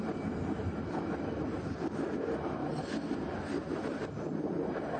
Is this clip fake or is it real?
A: real